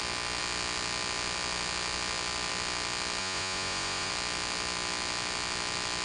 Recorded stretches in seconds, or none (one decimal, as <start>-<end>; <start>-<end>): 0.0-3.2; 4.1-6.0